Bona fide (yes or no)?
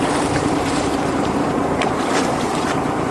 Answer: no